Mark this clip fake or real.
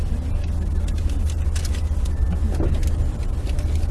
real